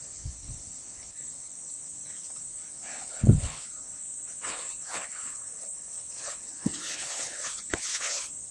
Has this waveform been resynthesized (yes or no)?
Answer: yes